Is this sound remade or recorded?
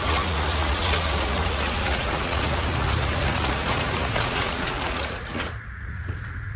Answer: remade